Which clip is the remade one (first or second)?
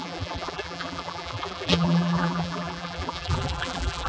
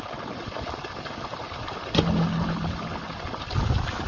first